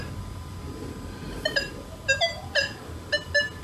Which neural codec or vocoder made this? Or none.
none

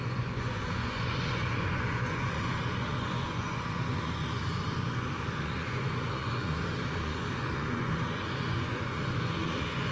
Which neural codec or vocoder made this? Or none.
vocoder, Vocos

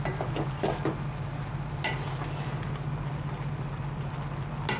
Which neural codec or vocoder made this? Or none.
none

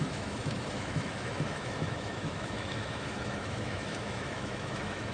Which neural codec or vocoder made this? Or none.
autoencoder, DAC-VAE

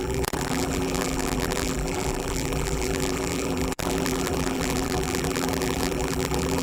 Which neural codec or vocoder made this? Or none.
vocoder, BigVGAN v2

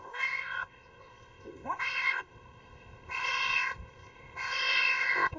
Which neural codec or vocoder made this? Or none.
codec, ZipCodec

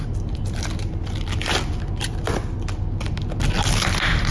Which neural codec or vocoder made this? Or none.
vocoder, BigVGAN v2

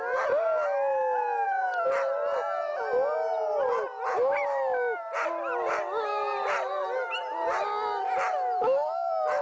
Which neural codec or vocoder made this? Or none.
none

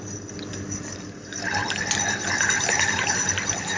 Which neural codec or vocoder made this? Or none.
none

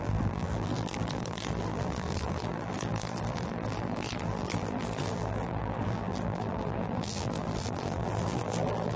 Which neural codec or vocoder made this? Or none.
vocoder, BigVGAN v2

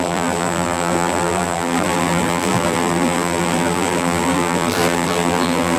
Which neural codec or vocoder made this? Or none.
vocoder, BigVGAN v2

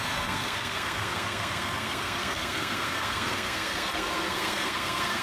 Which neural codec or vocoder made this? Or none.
codec, SNAC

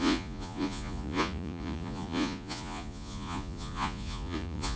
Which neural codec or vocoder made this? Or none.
vocoder, Vocos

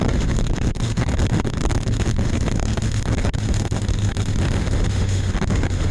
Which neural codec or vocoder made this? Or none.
autoencoder, DAC-VAE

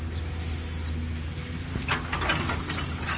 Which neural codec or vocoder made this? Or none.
none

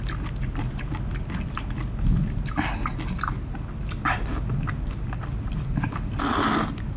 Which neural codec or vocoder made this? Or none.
none